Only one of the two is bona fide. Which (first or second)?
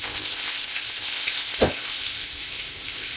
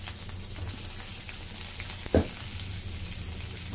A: second